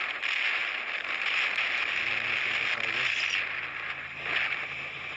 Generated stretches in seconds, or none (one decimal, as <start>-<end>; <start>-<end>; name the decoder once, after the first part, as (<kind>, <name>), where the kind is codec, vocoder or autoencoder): none